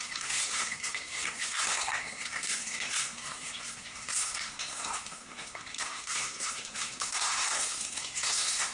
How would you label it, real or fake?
fake